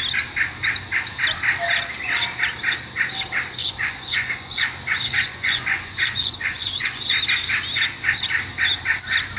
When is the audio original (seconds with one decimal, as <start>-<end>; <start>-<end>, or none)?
0.0-3.6; 7.0-9.4